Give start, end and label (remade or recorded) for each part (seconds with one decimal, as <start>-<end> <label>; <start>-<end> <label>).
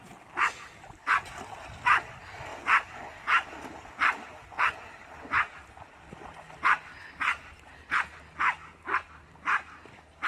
0.0-10.3 recorded